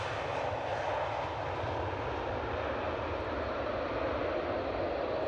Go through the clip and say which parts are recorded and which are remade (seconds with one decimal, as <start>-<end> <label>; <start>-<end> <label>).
0.0-5.3 recorded